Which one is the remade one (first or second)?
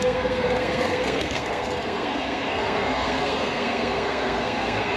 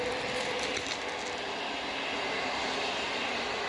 first